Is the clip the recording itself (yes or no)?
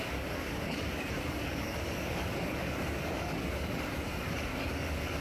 no